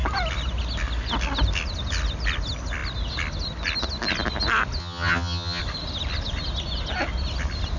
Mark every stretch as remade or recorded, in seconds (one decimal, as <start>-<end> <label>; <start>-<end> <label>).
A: 0.0-4.8 recorded; 4.8-5.6 remade; 5.6-7.8 recorded